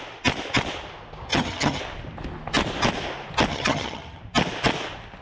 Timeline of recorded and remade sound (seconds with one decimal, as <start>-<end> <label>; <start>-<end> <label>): 0.0-1.3 recorded; 1.3-1.8 remade; 1.8-3.5 recorded; 3.5-4.2 remade; 4.2-5.2 recorded

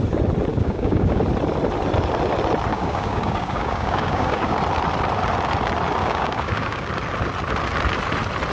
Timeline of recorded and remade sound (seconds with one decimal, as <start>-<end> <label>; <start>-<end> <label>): 0.0-0.5 recorded; 0.5-1.2 remade; 1.2-2.7 recorded; 2.7-4.6 remade; 4.6-6.0 recorded; 6.0-6.9 remade; 6.9-8.5 recorded

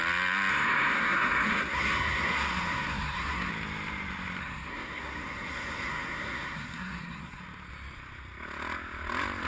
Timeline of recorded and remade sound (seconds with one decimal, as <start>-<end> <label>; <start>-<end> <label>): 0.0-0.5 recorded; 0.5-3.5 remade; 3.5-4.4 recorded; 4.4-7.4 remade; 7.4-9.5 recorded

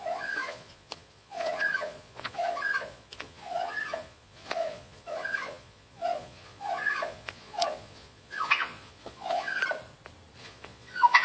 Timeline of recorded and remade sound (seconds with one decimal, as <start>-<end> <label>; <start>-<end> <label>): 0.0-9.6 remade; 9.6-10.4 recorded; 10.4-11.2 remade

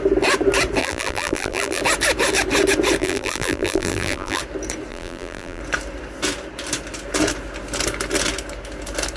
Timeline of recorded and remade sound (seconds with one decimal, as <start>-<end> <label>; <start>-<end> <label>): 0.0-0.8 recorded; 0.8-1.8 remade; 1.8-3.0 recorded; 3.0-4.4 remade; 4.4-4.9 recorded; 4.9-5.6 remade; 5.6-9.2 recorded

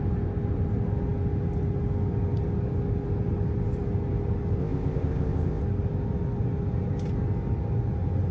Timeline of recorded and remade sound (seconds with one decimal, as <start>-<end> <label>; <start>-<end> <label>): 0.0-4.6 recorded; 4.6-5.6 remade; 5.6-8.3 recorded

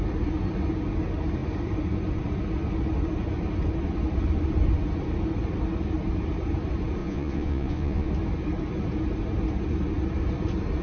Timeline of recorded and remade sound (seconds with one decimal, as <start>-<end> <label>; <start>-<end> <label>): 0.0-7.0 recorded; 7.0-8.1 remade; 8.1-10.8 recorded